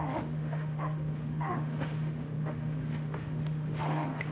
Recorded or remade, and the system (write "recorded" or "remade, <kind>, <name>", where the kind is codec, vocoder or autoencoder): remade, autoencoder, DAC-VAE